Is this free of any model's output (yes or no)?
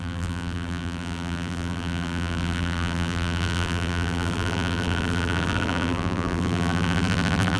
no